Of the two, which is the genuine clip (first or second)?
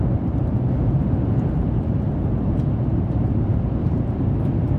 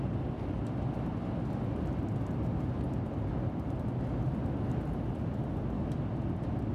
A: second